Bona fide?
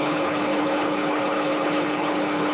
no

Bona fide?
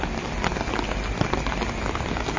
yes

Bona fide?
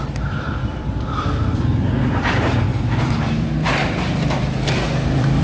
no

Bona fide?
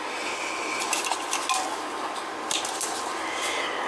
yes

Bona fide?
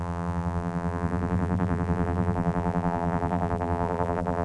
no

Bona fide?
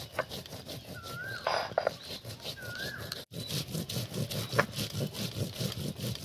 yes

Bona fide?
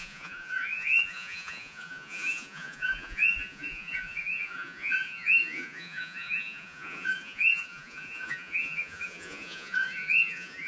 no